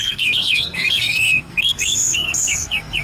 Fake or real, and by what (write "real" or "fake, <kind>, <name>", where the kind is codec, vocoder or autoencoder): fake, codec, SNAC